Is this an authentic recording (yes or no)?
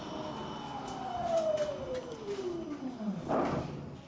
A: yes